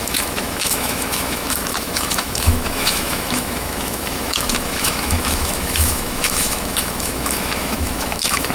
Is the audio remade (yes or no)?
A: yes